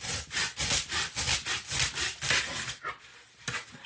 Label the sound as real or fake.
real